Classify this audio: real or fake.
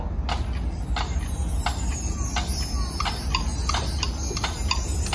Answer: real